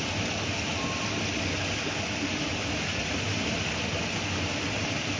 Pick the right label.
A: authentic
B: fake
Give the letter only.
A